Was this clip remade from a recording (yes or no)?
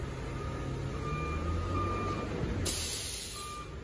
no